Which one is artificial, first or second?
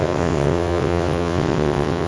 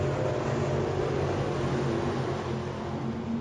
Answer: first